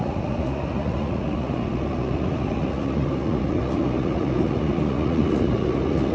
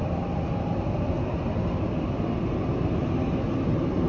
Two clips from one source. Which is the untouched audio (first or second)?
second